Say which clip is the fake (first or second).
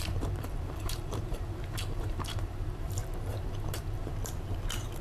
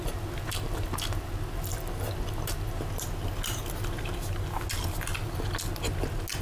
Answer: first